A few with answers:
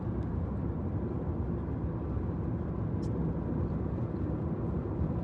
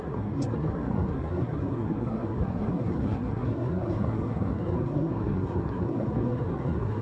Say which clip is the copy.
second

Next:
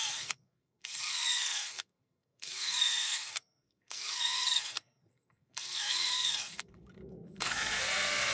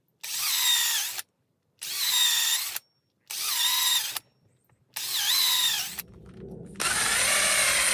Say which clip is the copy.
first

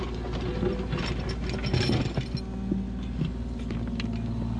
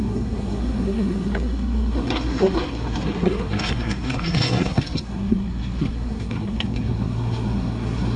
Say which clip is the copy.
second